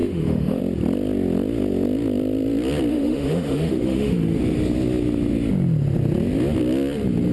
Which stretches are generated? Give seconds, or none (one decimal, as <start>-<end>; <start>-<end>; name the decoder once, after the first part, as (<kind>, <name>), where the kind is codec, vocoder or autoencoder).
0.0-0.6 (autoencoder, DAC-VAE); 2.9-4.4